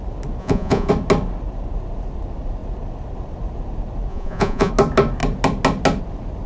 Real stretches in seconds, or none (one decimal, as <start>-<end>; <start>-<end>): 0.0-0.4; 0.9-4.1; 4.7-6.5